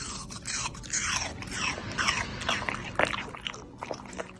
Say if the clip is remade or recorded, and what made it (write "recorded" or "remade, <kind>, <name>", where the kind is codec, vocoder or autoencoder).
recorded